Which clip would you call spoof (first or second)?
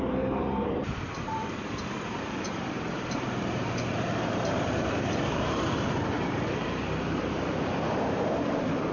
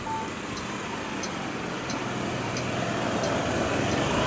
first